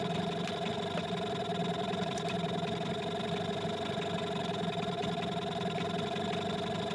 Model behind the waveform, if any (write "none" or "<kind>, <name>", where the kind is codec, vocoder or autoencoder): none